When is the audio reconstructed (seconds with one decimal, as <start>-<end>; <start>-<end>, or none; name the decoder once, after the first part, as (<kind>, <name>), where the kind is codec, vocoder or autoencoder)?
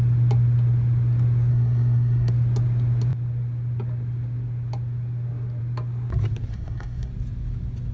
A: 1.5-2.3 (codec, SNAC); 6.5-7.1